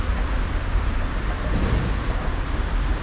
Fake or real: real